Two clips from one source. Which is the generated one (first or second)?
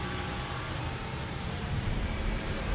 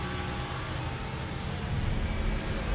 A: first